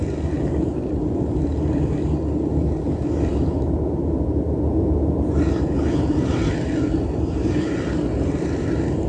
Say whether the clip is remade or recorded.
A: recorded